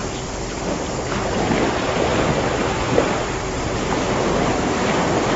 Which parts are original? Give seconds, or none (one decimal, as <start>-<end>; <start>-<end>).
0.0-2.1; 3.7-5.4